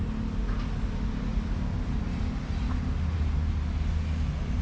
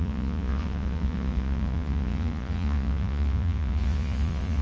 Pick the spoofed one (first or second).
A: second